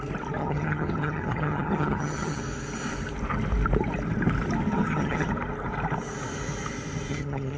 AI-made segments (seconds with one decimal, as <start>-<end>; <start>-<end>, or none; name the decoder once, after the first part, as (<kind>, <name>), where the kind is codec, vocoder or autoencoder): 0.4-2.4 (vocoder, HiFi-GAN); 4.7-5.3; 7.1-7.6